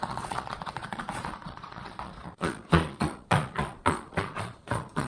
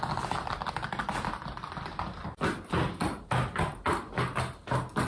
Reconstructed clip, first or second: first